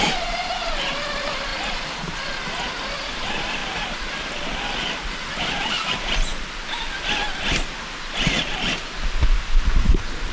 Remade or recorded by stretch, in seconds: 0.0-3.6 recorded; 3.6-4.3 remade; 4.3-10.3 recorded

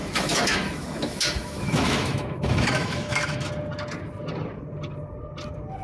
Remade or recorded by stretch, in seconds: 0.0-3.5 remade; 3.5-5.8 recorded

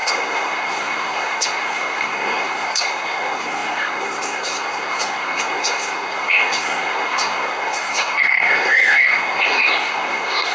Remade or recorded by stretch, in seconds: 0.0-10.5 remade

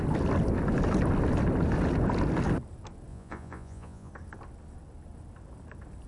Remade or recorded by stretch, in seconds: 0.0-3.1 recorded; 3.1-4.1 remade; 4.1-6.1 recorded

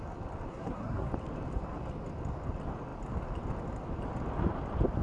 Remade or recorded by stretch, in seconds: 0.0-0.5 recorded; 0.5-1.1 remade; 1.1-5.0 recorded

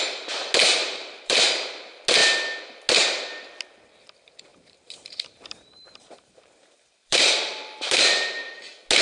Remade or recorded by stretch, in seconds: 0.0-0.8 recorded; 0.8-1.4 remade; 1.4-4.5 recorded; 4.5-8.6 remade; 8.6-9.0 recorded

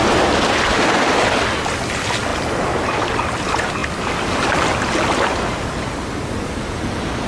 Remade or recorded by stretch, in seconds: 0.0-7.3 recorded